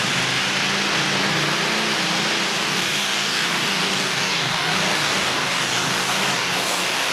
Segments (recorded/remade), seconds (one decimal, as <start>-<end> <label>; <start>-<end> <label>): 0.0-2.6 recorded; 2.6-7.1 remade

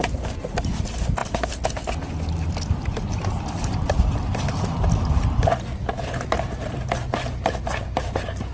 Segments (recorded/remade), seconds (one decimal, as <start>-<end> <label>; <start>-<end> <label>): 0.0-8.5 recorded

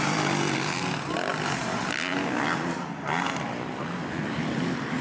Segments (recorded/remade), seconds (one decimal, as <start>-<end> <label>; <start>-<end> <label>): 0.0-5.0 recorded

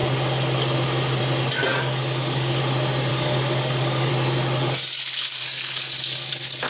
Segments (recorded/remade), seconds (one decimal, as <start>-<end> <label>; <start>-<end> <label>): 0.0-1.7 recorded; 1.7-2.6 remade; 2.6-3.1 recorded; 3.1-4.1 remade; 4.1-5.4 recorded; 5.4-6.3 remade; 6.3-6.7 recorded

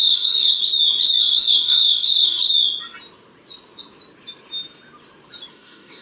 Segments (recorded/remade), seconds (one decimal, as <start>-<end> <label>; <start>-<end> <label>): 0.0-0.6 remade; 0.6-1.2 recorded; 1.2-2.4 remade; 2.4-5.5 recorded; 5.5-6.0 remade